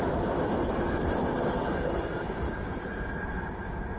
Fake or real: real